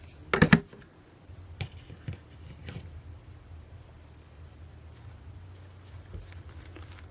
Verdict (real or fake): real